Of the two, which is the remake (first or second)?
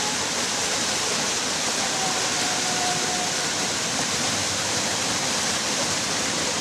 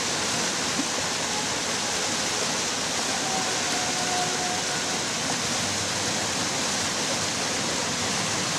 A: first